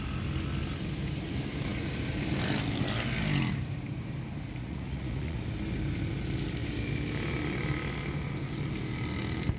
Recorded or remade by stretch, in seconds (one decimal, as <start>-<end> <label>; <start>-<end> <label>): 0.0-4.6 recorded; 4.6-5.4 remade; 5.4-9.6 recorded

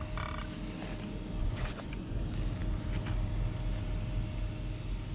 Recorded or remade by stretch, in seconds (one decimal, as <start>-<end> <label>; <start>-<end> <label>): 0.0-1.4 recorded; 1.4-2.2 remade; 2.2-5.1 recorded